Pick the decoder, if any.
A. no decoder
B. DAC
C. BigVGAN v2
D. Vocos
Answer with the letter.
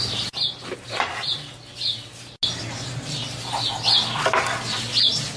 A